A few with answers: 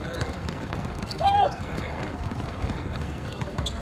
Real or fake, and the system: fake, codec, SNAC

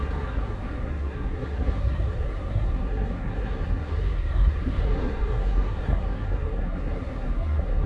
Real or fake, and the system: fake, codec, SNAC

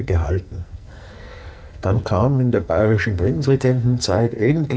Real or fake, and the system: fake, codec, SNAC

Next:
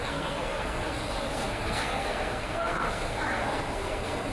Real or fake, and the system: fake, codec, SNAC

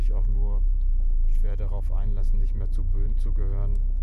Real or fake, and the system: real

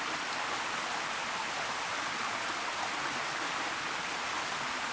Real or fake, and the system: real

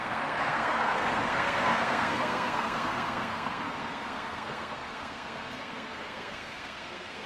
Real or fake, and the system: fake, codec, SNAC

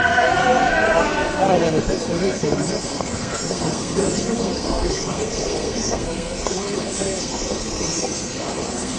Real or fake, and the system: fake, codec, SNAC